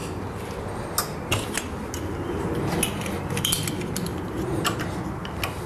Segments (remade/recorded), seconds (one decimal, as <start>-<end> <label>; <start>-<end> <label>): 0.0-4.1 recorded; 4.1-4.8 remade; 4.8-5.7 recorded